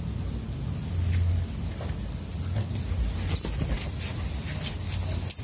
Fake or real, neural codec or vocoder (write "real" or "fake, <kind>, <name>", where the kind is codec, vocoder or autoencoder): real